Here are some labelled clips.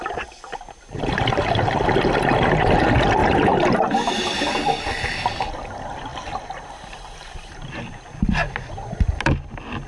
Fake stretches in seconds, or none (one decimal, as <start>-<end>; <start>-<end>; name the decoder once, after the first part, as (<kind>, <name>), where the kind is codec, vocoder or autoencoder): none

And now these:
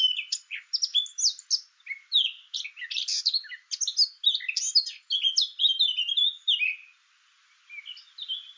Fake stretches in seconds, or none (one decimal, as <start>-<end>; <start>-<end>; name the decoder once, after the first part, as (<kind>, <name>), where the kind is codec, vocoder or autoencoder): none

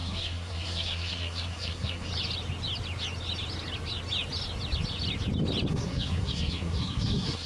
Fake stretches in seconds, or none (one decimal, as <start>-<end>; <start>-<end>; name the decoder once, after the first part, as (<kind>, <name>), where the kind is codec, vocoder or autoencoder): 0.0-2.1 (codec, SNAC); 5.7-7.5

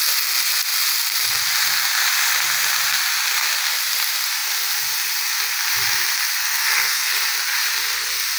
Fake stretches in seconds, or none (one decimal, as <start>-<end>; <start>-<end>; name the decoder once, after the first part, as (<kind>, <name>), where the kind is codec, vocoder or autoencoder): 6.4-7.2 (codec, SNAC)

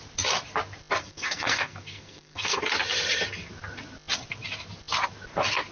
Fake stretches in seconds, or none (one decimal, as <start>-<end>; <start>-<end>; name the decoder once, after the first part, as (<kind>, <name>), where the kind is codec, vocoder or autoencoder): 1.0-2.6 (codec, SNAC)

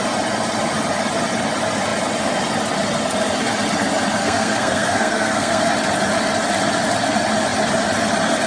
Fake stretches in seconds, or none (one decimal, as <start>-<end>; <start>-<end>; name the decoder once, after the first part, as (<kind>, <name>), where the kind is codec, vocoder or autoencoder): 4.2-5.7 (codec, SNAC)